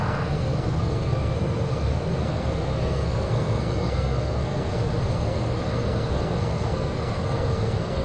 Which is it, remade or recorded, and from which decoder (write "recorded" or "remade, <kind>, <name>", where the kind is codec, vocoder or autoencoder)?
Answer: remade, codec, SNAC